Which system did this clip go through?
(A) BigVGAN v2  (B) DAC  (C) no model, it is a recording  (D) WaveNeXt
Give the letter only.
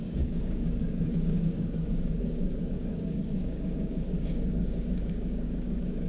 B